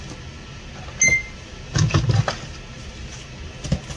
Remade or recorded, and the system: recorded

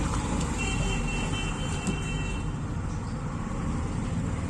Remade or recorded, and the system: recorded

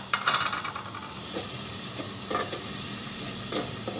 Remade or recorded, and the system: recorded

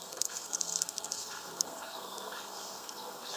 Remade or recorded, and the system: remade, codec, SNAC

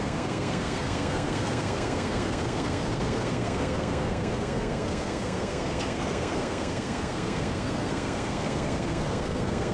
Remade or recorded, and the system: remade, codec, SNAC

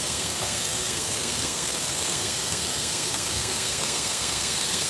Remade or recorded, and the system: remade, codec, SNAC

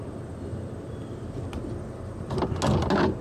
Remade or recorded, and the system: recorded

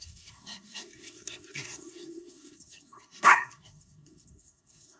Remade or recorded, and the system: remade, codec, SNAC